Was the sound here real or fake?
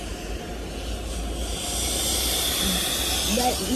real